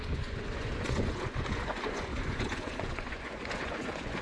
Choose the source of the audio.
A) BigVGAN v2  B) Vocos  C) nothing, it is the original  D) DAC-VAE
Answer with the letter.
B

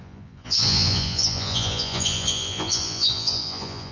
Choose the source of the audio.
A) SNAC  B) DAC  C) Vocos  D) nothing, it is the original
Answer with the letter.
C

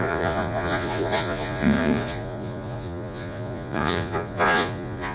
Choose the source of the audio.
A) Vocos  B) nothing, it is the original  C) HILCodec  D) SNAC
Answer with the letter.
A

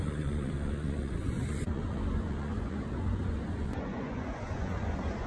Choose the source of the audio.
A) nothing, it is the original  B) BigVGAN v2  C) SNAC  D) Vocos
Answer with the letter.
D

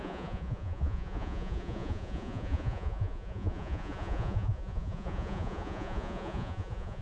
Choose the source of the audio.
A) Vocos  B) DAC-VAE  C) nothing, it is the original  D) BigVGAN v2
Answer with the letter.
A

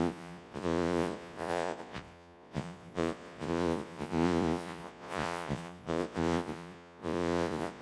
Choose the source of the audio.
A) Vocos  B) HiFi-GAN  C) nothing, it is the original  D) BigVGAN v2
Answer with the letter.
A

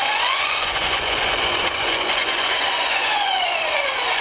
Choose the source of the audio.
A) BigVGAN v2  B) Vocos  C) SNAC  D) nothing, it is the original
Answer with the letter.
B